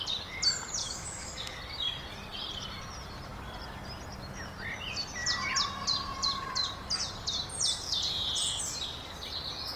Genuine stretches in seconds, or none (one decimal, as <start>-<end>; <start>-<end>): 0.0-0.8; 1.6-9.8